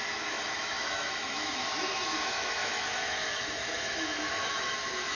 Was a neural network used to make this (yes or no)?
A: yes